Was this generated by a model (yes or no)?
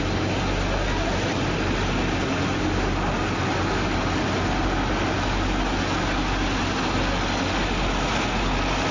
no